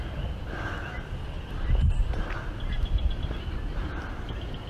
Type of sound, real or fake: real